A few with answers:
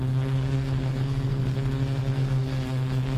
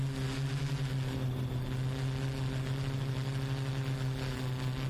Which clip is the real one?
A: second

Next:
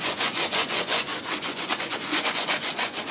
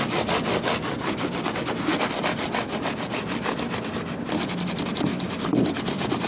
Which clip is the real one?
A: second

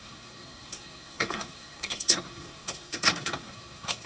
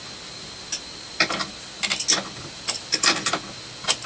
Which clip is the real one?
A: second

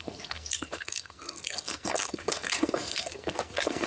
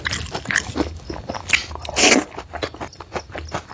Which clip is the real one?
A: second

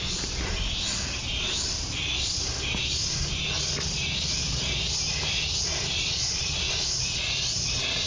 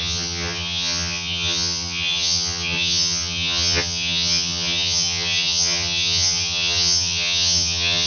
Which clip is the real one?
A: first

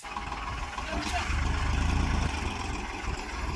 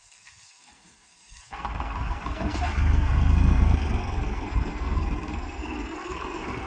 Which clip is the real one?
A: first